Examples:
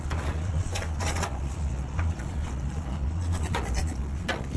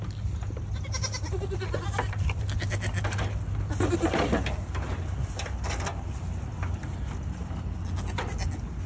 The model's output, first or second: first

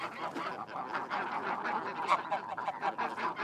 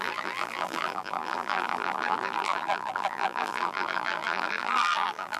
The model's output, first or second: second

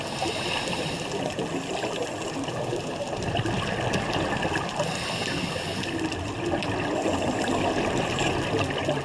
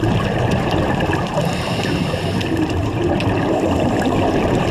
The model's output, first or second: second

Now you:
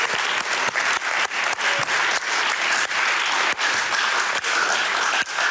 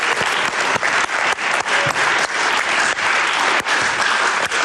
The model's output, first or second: second